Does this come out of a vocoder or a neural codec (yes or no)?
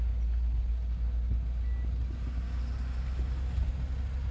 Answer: no